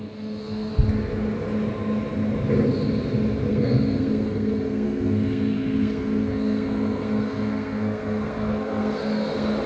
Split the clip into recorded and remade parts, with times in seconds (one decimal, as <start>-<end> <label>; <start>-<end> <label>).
0.0-0.7 remade; 0.7-3.5 recorded; 3.5-9.7 remade